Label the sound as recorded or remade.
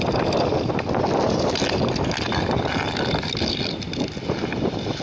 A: recorded